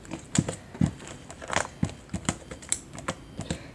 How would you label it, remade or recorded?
recorded